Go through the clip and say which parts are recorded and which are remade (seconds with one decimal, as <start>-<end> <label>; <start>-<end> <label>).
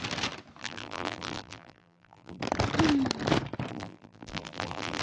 0.0-0.6 recorded; 0.6-2.4 remade; 2.4-3.7 recorded; 3.7-5.0 remade